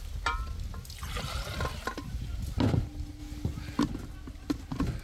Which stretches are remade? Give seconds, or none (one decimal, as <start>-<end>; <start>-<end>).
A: none